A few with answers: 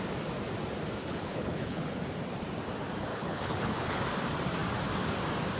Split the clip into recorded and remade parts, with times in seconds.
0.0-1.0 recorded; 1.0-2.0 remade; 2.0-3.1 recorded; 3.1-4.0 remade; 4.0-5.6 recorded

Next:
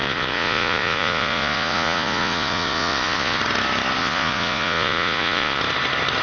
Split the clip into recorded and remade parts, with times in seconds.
0.0-3.4 remade; 3.4-4.0 recorded; 4.0-5.6 remade; 5.6-6.2 recorded